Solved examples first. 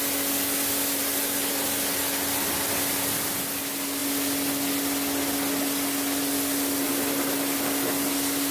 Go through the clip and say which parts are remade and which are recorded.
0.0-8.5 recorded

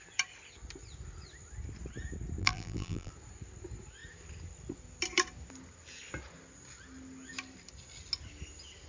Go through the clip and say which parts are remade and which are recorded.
0.0-2.4 recorded; 2.4-3.1 remade; 3.1-8.9 recorded

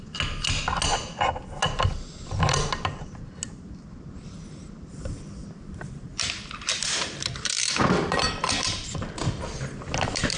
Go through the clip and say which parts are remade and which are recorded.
0.0-6.1 recorded; 6.1-9.6 remade; 9.6-10.4 recorded

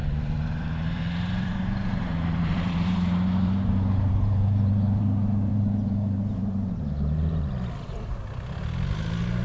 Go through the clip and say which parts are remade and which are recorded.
0.0-5.0 remade; 5.0-5.5 recorded; 5.5-6.8 remade; 6.8-9.4 recorded

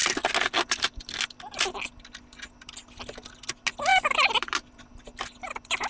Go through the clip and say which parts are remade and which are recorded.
0.0-5.9 recorded

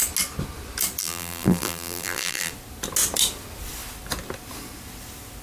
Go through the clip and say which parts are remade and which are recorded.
0.0-1.0 recorded; 1.0-2.5 remade; 2.5-5.4 recorded

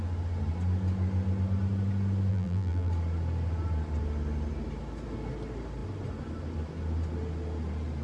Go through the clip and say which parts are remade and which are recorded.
0.0-2.3 recorded; 2.3-2.9 remade; 2.9-8.0 recorded